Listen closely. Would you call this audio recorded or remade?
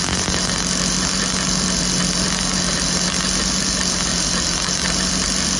recorded